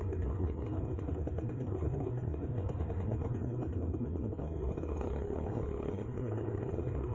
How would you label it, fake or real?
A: fake